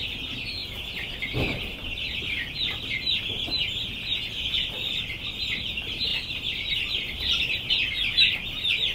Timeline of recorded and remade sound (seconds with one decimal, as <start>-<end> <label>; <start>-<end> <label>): 0.0-8.9 recorded